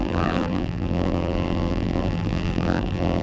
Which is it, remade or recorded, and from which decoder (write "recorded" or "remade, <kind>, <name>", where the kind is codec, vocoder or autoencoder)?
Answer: remade, vocoder, BigVGAN v2